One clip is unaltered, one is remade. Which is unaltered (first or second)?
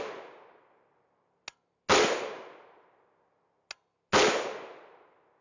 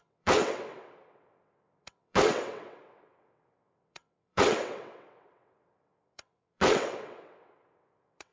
first